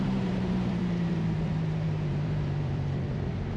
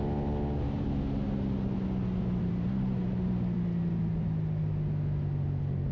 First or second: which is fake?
first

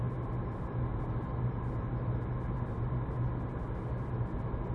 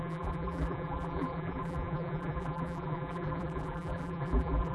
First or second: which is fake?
second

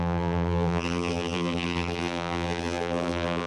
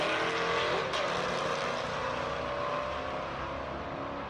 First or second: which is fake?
first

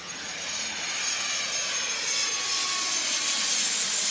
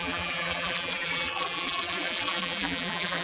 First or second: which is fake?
second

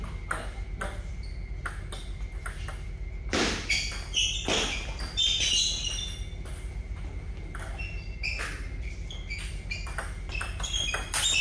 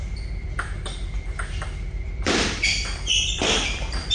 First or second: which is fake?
second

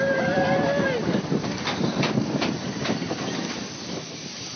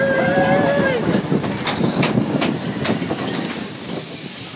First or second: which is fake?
first